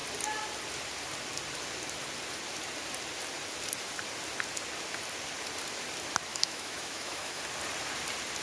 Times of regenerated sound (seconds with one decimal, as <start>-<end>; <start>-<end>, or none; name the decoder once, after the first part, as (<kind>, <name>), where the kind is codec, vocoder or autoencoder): 6.3-7.4 (autoencoder, DAC-VAE)